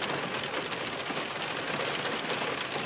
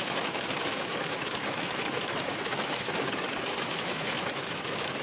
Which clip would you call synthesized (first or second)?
second